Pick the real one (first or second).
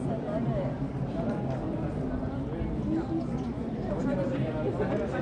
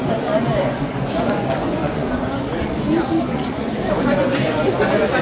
first